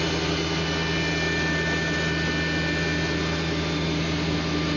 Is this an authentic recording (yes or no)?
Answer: yes